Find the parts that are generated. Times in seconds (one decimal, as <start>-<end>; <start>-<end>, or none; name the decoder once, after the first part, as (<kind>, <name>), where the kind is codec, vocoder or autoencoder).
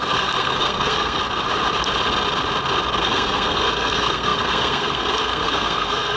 0.0-1.2 (codec, SNAC); 3.0-6.2